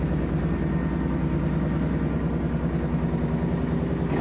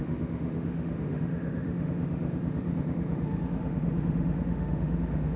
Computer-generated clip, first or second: second